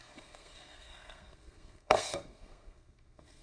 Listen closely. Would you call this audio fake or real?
fake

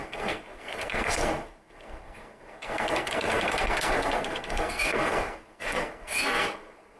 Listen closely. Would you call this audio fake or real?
fake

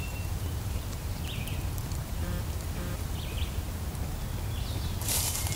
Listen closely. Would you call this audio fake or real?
fake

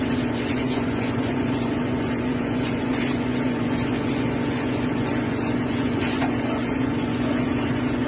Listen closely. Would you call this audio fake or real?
fake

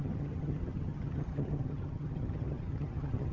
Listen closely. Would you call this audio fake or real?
fake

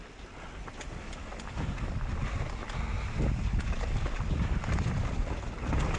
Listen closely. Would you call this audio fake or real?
real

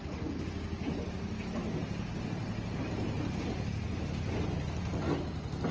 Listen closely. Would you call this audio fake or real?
real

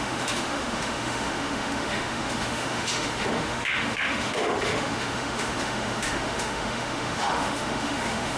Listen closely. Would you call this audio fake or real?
fake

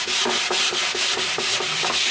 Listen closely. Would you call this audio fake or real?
real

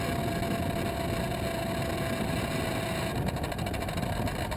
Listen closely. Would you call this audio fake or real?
real